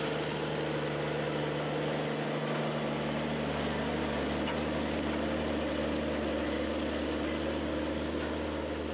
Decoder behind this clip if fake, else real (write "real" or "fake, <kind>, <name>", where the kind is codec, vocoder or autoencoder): real